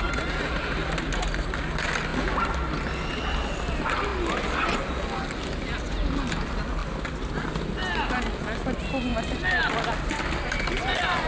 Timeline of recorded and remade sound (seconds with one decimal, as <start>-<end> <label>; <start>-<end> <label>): 0.0-11.3 recorded